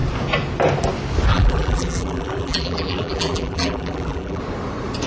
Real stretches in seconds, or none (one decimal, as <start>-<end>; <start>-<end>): 0.0-1.3; 4.4-5.1